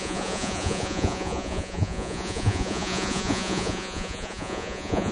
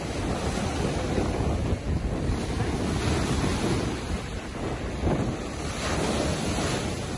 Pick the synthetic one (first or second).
first